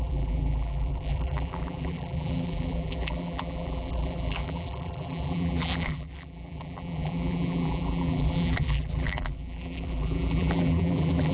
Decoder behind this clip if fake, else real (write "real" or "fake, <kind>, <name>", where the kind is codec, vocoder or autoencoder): fake, vocoder, BigVGAN v2